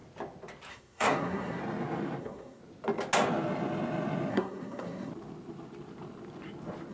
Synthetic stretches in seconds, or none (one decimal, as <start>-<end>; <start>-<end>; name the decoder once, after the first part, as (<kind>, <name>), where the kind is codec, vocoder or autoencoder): 0.7-1.6 (codec, SNAC); 2.2-2.6; 4.3-5.1